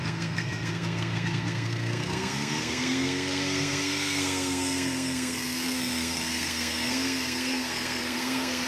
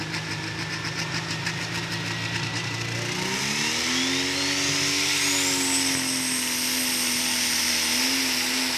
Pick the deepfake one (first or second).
first